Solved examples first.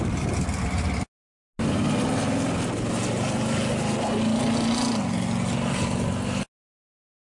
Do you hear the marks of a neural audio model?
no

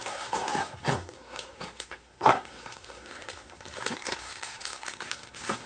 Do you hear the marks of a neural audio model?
yes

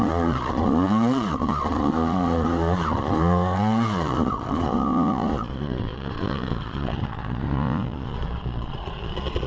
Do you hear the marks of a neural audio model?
yes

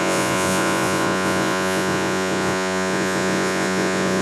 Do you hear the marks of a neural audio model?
yes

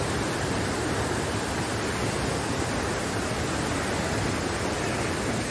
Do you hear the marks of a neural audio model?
no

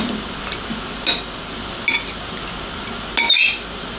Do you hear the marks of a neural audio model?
no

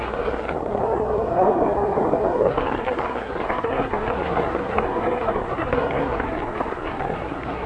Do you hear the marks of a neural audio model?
yes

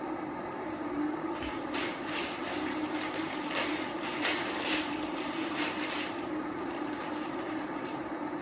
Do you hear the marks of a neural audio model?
yes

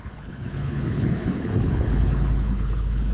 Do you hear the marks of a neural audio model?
yes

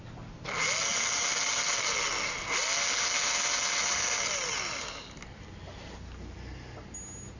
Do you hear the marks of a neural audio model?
no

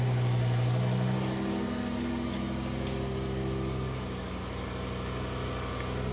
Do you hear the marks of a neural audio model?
no